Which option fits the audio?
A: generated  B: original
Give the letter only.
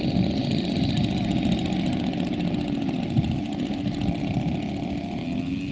B